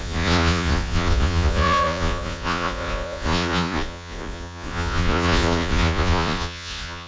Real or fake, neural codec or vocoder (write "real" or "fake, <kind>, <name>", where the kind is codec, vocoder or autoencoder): fake, vocoder, Vocos